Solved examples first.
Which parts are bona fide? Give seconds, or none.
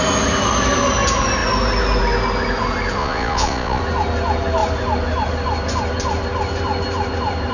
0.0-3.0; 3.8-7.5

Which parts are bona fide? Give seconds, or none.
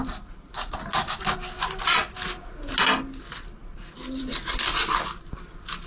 0.0-5.9